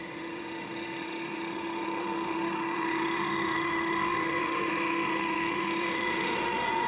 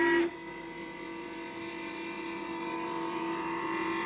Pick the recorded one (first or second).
second